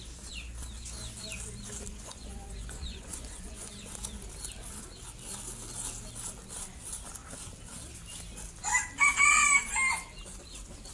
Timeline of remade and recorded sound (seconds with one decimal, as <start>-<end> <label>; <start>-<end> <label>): 0.0-1.9 recorded; 1.9-3.7 remade; 3.7-10.9 recorded